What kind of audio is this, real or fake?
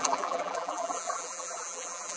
fake